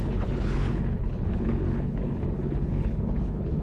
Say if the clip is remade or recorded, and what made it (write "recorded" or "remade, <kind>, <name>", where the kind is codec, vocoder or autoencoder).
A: remade, codec, HILCodec